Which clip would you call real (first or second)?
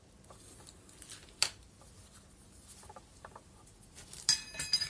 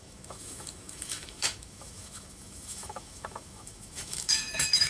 first